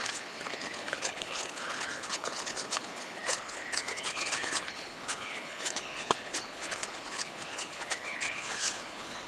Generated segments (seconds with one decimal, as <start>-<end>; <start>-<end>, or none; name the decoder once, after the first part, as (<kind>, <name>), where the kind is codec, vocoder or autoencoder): 0.0-9.3 (codec, HILCodec)